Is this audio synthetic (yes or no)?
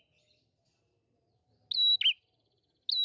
no